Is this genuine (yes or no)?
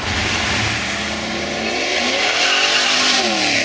yes